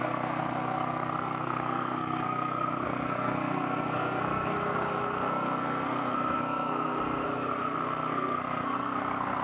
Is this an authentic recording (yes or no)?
no